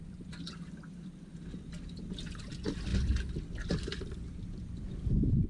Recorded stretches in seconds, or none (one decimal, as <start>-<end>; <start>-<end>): 1.3-2.5; 2.9-3.7